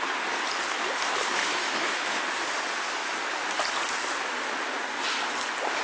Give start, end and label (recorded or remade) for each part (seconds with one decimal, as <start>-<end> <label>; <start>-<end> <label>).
0.0-1.4 recorded; 1.4-2.2 remade; 2.2-5.8 recorded